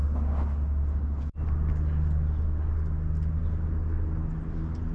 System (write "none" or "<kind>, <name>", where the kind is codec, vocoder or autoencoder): none